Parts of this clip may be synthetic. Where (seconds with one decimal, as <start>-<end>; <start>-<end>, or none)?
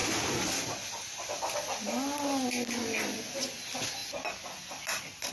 none